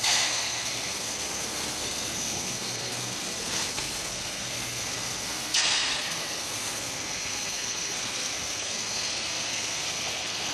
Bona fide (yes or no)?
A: no